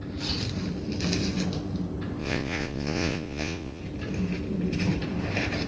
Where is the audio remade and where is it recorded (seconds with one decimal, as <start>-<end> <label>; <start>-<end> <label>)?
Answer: 0.0-2.2 recorded; 2.2-3.8 remade; 3.8-5.7 recorded